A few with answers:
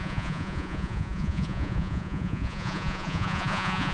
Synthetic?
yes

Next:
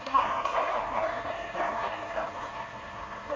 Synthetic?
yes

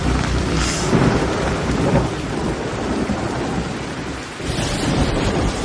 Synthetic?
yes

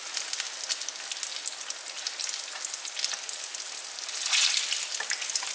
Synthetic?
no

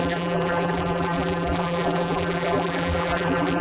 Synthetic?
yes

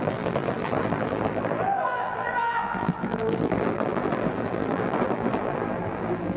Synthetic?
yes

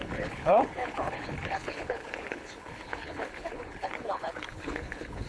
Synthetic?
yes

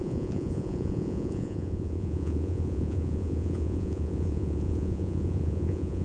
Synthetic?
yes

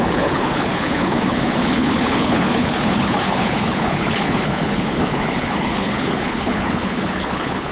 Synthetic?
yes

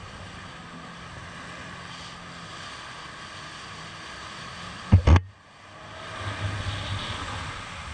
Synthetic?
no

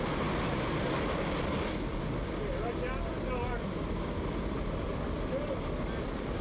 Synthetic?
no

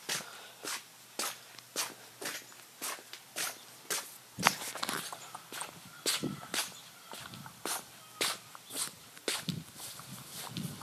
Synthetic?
no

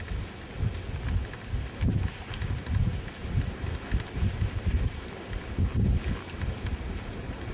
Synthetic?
no